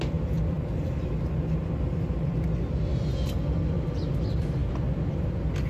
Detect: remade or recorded recorded